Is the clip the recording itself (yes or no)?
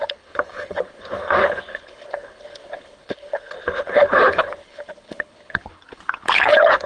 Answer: no